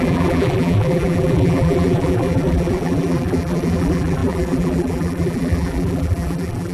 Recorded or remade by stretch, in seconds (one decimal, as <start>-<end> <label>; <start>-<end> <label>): 0.0-6.7 remade